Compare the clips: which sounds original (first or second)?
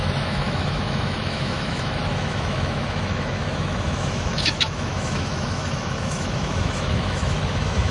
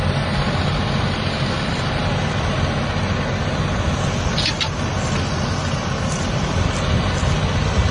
second